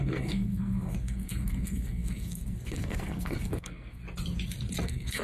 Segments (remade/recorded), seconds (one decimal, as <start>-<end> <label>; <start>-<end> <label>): 0.0-4.0 remade; 4.0-4.8 recorded; 4.8-5.2 remade